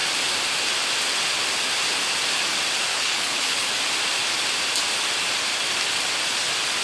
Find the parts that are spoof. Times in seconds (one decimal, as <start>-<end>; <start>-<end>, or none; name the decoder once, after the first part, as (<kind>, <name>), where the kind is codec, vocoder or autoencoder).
2.9-3.7 (codec, HILCodec)